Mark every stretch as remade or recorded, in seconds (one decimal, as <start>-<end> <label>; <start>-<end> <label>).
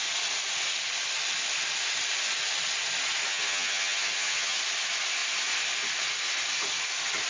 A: 0.0-3.3 recorded; 3.3-4.6 remade; 4.6-7.3 recorded